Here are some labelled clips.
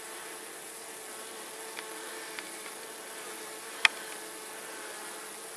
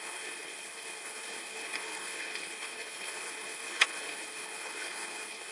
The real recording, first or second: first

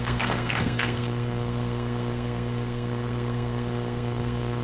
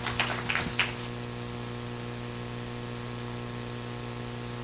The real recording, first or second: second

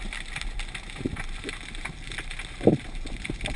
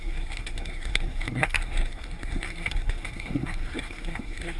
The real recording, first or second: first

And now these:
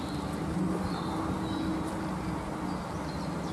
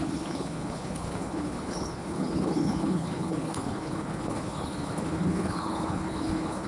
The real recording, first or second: first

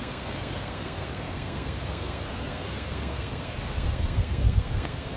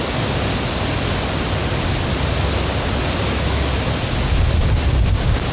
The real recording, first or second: second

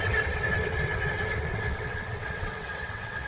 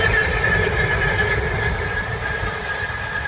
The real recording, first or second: second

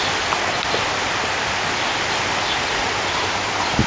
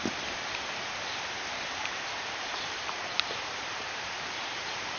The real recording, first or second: first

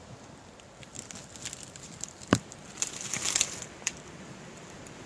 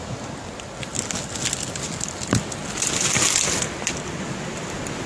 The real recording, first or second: second